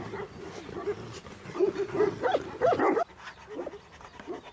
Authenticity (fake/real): real